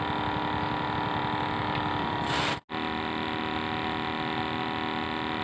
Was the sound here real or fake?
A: real